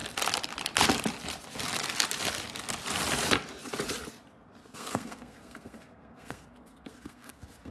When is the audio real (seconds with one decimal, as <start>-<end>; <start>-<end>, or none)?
0.0-4.6